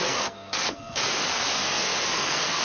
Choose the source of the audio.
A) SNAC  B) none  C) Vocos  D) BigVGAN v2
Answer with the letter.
A